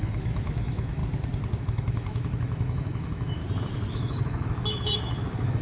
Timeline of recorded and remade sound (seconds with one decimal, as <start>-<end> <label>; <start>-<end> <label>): 0.0-1.0 remade; 1.0-1.6 recorded; 1.6-3.4 remade; 3.4-3.9 recorded; 3.9-5.6 remade